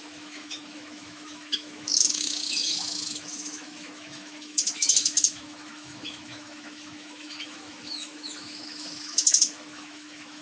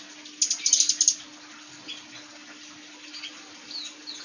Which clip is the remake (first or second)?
first